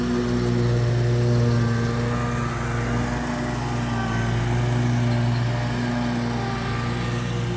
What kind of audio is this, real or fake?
real